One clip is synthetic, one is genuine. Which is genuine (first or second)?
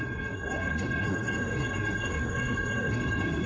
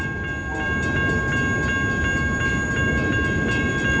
second